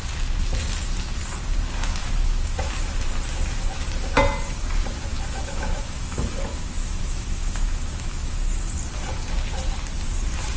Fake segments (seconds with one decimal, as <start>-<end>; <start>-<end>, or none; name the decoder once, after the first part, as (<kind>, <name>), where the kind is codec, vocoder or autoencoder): 2.0-3.0 (autoencoder, DAC-VAE); 5.1-8.7